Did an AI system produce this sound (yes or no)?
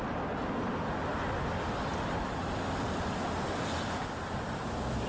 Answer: no